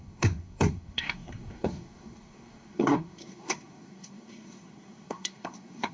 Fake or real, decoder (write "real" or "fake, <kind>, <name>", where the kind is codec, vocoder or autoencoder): fake, codec, SNAC